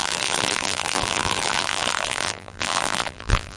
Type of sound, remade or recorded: remade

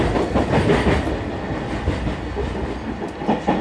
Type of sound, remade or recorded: recorded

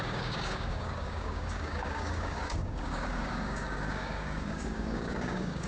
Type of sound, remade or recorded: remade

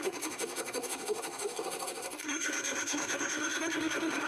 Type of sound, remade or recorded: remade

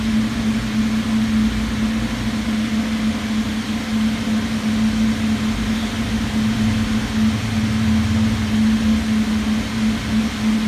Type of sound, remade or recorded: recorded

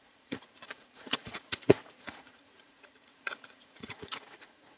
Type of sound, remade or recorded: remade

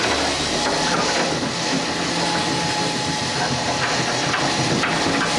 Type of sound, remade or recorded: recorded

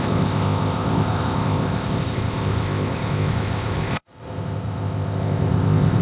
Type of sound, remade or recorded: remade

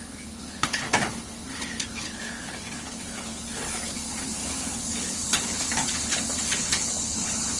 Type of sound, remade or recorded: remade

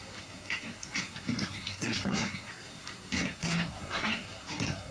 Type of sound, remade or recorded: remade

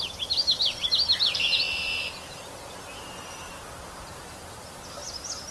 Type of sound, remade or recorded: recorded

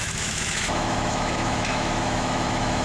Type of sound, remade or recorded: remade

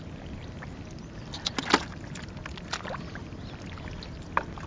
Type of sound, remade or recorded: recorded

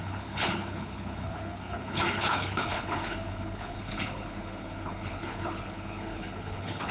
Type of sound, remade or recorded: remade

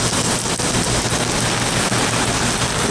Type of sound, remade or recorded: recorded